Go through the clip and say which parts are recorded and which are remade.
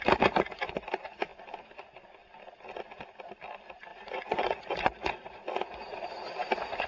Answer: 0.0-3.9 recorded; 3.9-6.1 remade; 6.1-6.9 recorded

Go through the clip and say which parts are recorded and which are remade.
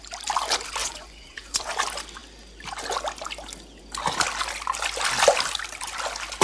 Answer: 0.0-0.8 recorded; 0.8-1.7 remade; 1.7-6.4 recorded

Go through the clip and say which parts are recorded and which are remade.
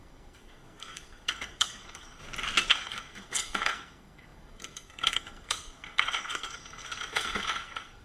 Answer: 0.0-2.2 remade; 2.2-2.7 recorded; 2.7-8.0 remade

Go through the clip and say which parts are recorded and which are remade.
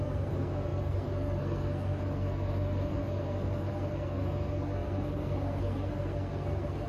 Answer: 0.0-6.9 remade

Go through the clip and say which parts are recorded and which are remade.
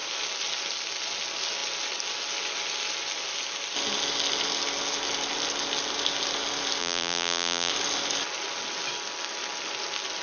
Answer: 0.0-6.8 recorded; 6.8-7.7 remade; 7.7-10.2 recorded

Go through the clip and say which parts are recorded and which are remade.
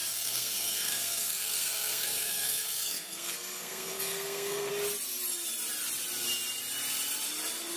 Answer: 0.0-4.7 remade; 4.7-7.8 recorded